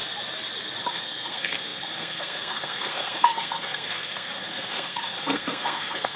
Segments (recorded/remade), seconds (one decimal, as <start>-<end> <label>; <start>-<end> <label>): 0.0-0.9 recorded; 0.9-6.2 remade